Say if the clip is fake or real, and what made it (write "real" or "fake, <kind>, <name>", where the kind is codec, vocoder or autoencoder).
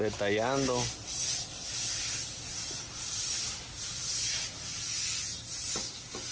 real